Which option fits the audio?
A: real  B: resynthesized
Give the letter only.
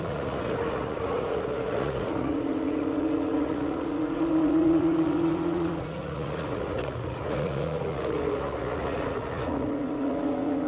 B